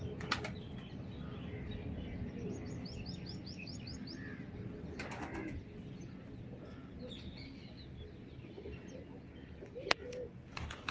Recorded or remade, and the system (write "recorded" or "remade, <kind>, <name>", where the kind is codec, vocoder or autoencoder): recorded